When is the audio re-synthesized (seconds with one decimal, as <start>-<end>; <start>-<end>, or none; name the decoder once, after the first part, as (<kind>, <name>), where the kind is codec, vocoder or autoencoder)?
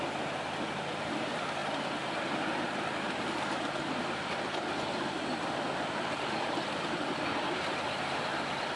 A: none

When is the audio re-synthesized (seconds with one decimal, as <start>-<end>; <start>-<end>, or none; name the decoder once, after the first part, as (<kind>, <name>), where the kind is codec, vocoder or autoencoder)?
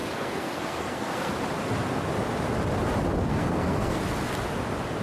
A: 0.0-1.3 (codec, SNAC); 3.3-4.0